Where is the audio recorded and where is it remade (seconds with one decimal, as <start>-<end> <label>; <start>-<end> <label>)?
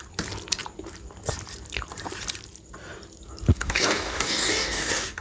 0.0-3.5 recorded; 3.5-5.2 remade